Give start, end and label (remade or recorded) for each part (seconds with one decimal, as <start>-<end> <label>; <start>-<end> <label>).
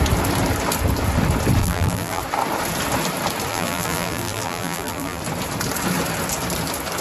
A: 0.0-1.6 recorded; 1.6-2.2 remade; 2.2-3.5 recorded; 3.5-5.2 remade; 5.2-7.0 recorded